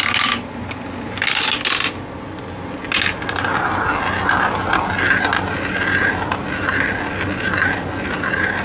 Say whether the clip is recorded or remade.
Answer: recorded